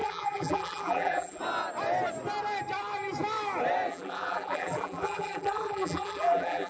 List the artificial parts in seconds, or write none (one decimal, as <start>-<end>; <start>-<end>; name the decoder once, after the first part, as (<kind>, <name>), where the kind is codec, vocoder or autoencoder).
0.0-1.4 (vocoder, BigVGAN v2); 3.9-6.7